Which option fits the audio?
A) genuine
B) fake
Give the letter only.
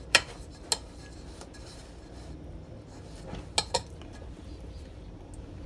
A